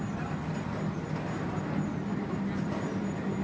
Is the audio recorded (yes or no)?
yes